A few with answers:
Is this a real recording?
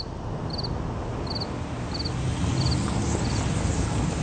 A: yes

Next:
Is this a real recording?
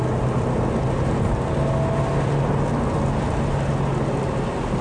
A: yes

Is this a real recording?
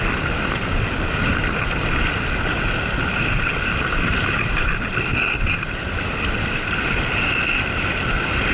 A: yes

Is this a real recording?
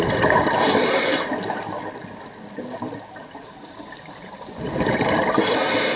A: yes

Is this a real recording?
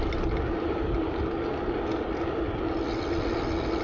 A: yes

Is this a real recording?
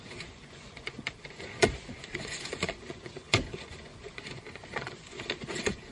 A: no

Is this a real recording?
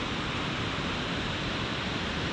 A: yes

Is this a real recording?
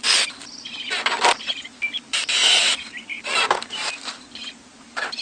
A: yes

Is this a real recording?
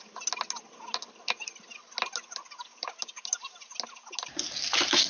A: yes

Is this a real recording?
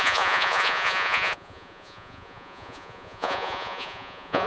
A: no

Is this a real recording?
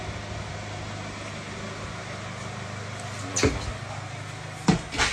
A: yes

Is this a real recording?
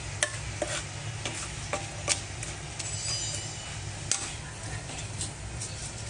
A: yes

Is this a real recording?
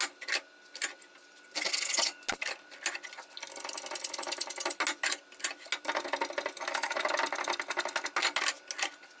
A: yes